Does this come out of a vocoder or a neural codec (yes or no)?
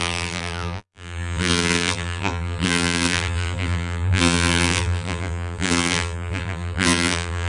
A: yes